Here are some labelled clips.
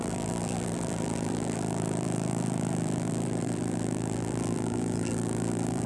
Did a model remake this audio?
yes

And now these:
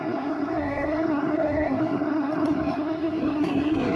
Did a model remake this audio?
yes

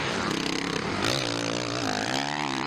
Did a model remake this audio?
no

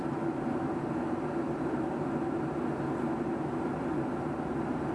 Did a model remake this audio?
no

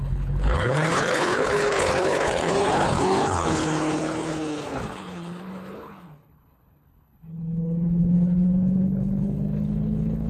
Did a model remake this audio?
yes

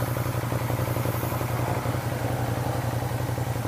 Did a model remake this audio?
no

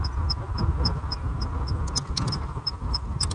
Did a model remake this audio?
no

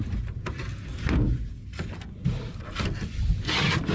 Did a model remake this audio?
no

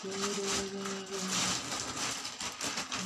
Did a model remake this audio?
no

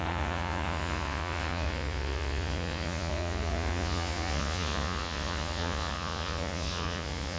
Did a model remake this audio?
yes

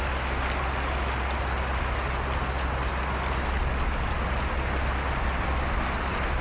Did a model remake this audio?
no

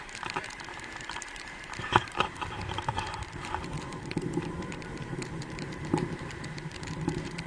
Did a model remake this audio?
yes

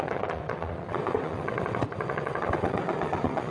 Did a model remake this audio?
yes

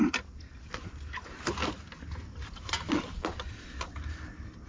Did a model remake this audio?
no